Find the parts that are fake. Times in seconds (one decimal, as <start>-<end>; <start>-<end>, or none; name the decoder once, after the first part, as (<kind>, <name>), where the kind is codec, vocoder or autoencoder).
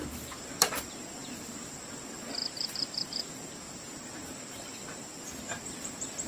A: 0.0-0.7 (vocoder, BigVGAN v2); 1.2-2.0; 2.4-5.2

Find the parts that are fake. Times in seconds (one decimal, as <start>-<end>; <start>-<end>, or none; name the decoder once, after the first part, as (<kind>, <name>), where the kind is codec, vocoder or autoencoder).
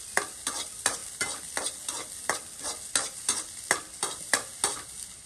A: none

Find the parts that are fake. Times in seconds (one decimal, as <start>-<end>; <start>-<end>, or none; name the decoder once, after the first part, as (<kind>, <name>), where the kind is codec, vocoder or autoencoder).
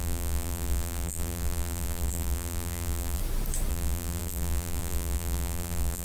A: 0.0-3.2 (vocoder, BigVGAN v2); 3.7-6.0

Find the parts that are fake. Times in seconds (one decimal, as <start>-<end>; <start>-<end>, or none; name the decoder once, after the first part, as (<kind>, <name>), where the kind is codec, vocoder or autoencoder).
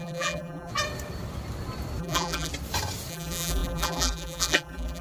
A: 0.0-0.7 (vocoder, BigVGAN v2); 2.0-2.5; 3.1-5.0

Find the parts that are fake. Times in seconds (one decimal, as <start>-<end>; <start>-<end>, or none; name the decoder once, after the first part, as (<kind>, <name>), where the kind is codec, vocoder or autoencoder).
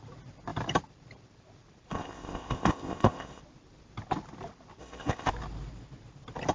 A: 1.9-3.4 (codec, ZipCodec); 4.8-5.3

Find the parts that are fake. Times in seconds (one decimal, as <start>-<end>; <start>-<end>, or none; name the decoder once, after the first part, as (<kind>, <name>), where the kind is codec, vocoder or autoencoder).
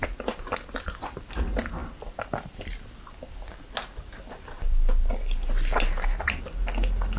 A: none